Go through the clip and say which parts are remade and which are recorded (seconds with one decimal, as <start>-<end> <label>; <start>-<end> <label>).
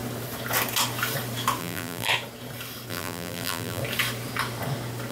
0.0-1.6 recorded; 1.6-2.1 remade; 2.1-2.9 recorded; 2.9-3.8 remade; 3.8-5.1 recorded